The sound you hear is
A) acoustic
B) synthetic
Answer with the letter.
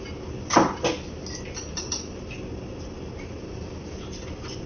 A